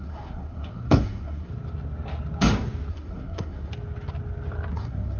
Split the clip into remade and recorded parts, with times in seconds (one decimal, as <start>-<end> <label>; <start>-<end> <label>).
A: 0.0-1.5 remade; 1.5-2.9 recorded; 2.9-3.7 remade; 3.7-4.7 recorded; 4.7-5.2 remade